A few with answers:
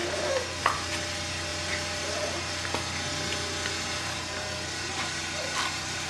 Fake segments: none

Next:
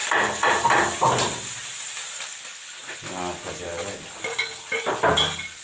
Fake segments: none

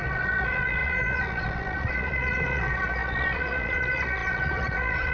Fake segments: 0.0-5.1 (vocoder, Vocos)

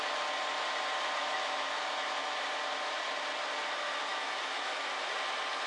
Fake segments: 1.2-2.4 (autoencoder, DAC-VAE); 4.1-4.9

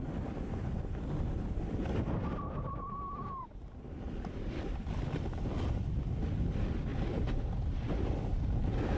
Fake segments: none

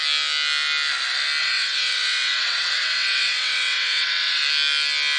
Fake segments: 1.4-4.4 (vocoder, WaveNeXt)

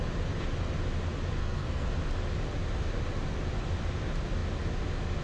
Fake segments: 1.4-1.9 (codec, SNAC)

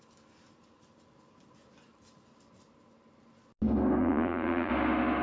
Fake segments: 4.0-4.7 (vocoder, Vocos)